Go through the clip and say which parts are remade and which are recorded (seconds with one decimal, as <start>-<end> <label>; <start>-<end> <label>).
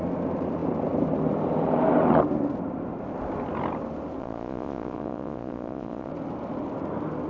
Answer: 0.0-4.2 recorded; 4.2-6.1 remade; 6.1-7.3 recorded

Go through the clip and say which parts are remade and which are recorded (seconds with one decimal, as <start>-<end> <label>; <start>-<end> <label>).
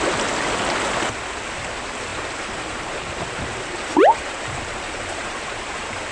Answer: 0.0-2.1 recorded; 2.1-5.6 remade; 5.6-6.1 recorded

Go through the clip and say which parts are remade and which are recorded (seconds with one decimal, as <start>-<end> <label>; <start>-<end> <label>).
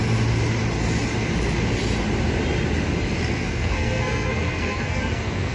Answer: 0.0-3.3 recorded; 3.3-5.5 remade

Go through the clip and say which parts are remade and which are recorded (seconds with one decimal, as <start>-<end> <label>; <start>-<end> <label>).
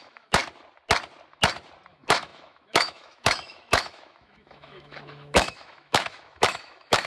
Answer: 0.0-0.4 remade; 0.4-1.9 recorded; 1.9-7.1 remade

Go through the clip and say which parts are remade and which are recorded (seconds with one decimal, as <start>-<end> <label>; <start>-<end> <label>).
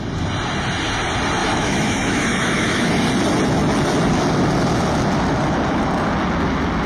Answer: 0.0-1.4 recorded; 1.4-2.9 remade; 2.9-6.9 recorded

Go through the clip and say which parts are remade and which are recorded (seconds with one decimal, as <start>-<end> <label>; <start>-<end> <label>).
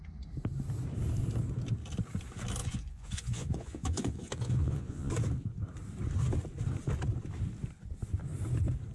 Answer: 0.0-2.6 recorded; 2.6-5.1 remade; 5.1-8.9 recorded